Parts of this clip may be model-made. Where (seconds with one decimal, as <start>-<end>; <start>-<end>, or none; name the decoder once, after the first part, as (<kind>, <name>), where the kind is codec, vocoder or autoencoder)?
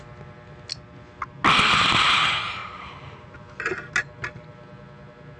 2.6-3.4 (vocoder, BigVGAN v2)